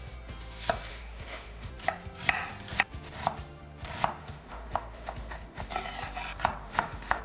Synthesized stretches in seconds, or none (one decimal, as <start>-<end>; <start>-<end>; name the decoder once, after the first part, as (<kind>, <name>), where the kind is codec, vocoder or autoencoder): 0.9-1.7 (autoencoder, DAC-VAE); 4.2-5.7; 6.6-7.2